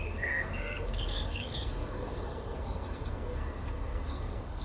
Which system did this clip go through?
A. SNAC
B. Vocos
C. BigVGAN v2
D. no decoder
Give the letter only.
A